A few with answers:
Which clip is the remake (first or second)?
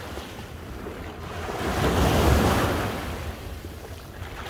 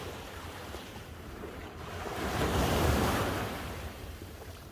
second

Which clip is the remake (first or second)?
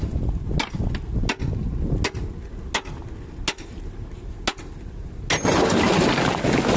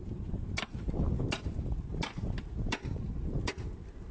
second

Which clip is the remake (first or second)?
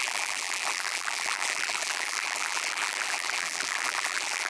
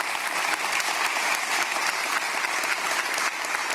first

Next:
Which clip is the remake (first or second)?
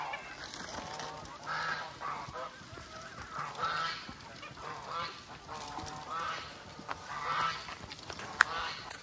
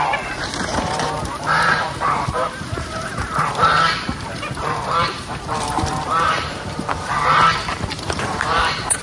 second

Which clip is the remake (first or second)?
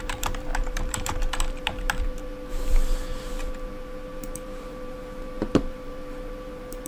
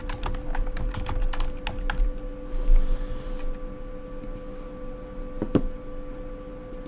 first